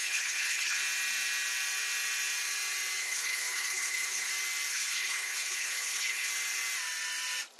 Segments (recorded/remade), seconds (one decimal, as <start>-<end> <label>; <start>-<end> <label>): 0.0-0.8 remade; 0.8-3.0 recorded; 3.0-4.3 remade; 4.3-4.7 recorded; 4.7-6.3 remade; 6.3-7.6 recorded